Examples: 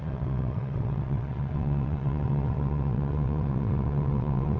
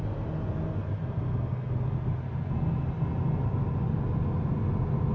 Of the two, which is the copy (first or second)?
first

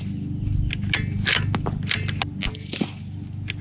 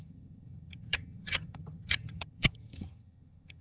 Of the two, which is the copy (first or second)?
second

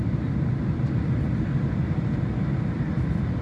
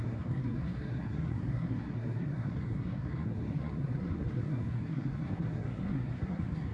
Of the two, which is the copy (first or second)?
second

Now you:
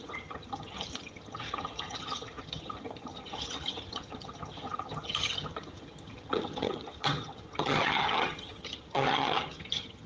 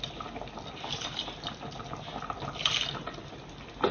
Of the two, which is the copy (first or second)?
first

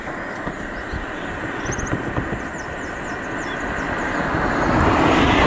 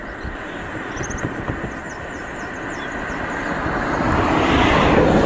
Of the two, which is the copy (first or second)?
second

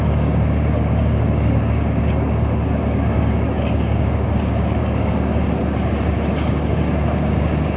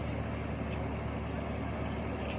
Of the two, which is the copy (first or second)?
first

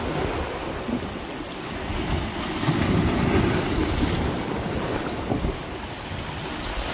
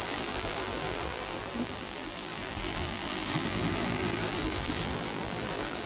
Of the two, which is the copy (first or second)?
second